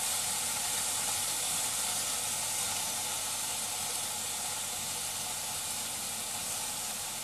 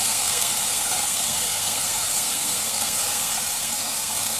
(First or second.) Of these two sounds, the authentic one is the first